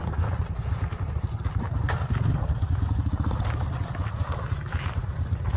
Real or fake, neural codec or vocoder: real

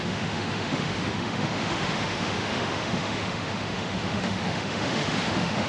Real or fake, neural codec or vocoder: fake, autoencoder, DAC-VAE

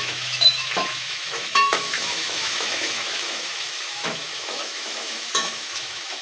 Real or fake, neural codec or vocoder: fake, autoencoder, DAC-VAE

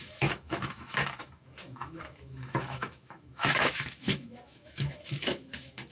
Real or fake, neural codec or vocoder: fake, autoencoder, DAC-VAE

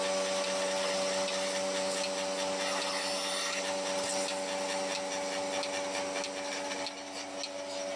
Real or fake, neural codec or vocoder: real